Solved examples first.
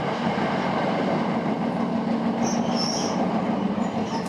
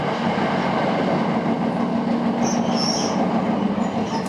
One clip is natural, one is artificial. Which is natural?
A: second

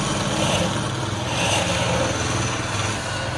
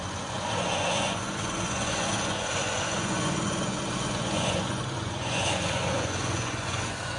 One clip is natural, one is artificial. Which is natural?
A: first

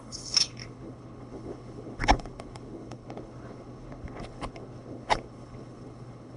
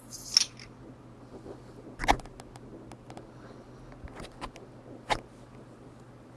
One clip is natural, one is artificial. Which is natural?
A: second